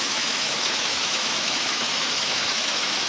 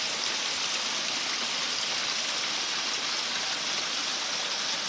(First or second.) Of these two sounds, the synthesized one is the first